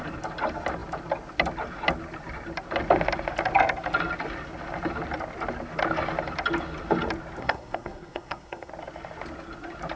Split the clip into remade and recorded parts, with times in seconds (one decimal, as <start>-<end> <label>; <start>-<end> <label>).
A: 0.0-7.4 recorded; 7.4-8.7 remade; 8.7-10.0 recorded